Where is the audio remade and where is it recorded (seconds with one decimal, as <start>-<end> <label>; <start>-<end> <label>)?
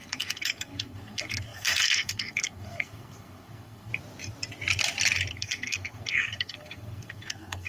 0.0-3.9 remade; 3.9-5.3 recorded; 5.3-7.7 remade